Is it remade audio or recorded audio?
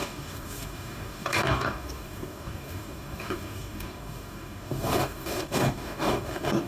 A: remade